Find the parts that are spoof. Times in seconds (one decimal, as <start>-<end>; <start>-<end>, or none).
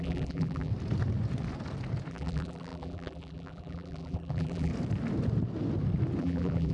0.0-0.7; 2.1-4.7; 6.2-6.7